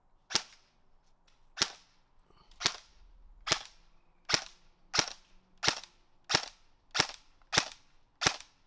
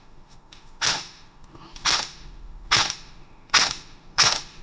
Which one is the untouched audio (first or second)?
first